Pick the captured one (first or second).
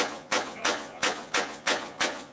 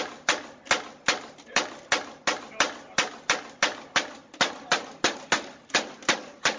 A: second